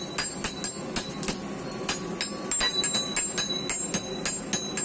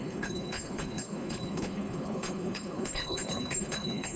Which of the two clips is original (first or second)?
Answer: first